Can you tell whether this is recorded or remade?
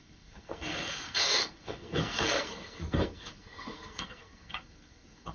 remade